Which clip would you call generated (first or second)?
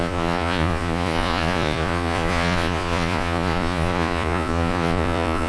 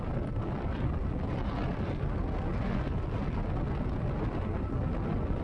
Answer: first